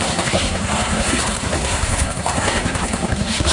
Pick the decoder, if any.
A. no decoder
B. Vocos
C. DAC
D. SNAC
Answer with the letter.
D